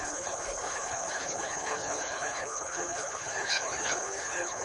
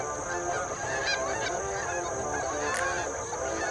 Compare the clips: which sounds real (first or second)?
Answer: second